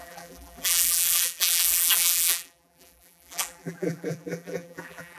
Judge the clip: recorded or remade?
remade